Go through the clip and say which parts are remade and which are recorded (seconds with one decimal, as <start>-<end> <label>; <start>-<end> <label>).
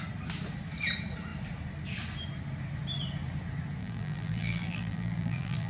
0.0-3.8 recorded; 3.8-5.7 remade